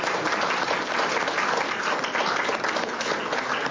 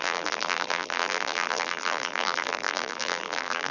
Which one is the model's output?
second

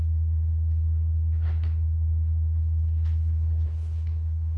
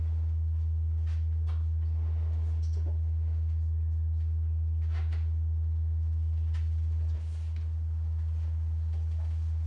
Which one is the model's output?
first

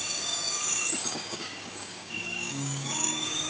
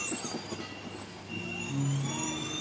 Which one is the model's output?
first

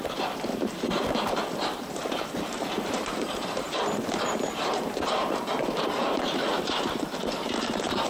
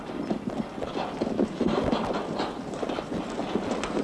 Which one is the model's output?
first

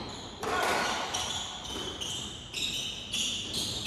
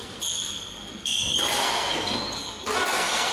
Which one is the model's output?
second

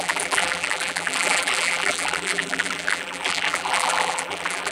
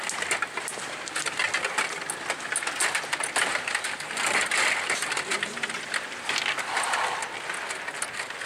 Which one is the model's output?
first